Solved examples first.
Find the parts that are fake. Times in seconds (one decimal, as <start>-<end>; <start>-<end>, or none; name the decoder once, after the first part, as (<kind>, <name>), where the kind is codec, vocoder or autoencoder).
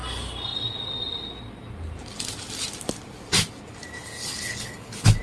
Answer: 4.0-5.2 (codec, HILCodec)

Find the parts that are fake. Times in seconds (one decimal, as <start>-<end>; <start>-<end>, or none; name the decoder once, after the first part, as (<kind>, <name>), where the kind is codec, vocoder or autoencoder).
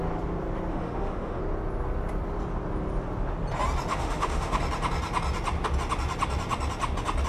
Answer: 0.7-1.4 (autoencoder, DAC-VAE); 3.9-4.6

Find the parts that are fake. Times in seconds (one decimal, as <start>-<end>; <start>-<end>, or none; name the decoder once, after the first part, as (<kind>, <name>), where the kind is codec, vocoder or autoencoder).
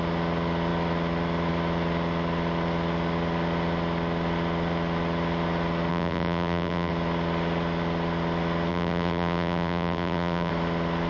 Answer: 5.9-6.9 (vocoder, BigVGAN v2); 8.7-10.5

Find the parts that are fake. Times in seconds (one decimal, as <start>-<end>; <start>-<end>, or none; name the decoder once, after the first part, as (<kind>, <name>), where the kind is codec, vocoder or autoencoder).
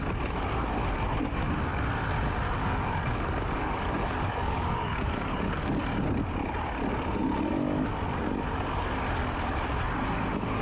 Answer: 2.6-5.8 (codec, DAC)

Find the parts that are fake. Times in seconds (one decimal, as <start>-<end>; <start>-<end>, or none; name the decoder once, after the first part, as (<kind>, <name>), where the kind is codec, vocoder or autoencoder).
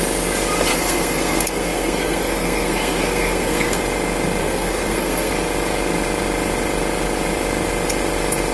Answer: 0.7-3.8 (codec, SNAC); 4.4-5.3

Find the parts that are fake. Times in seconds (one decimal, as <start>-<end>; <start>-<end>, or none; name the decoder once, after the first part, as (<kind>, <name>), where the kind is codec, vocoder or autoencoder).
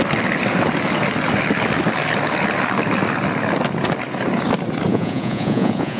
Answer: 4.9-6.0 (vocoder, Vocos)